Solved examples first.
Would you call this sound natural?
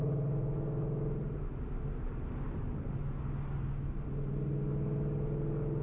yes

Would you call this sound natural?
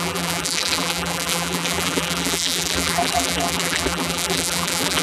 no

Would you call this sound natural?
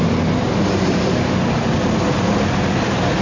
yes